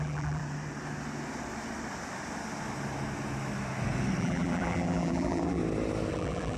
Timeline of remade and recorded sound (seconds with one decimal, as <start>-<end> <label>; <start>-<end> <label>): 0.0-0.4 remade; 0.4-4.2 recorded; 4.2-5.6 remade; 5.6-6.1 recorded; 6.1-6.6 remade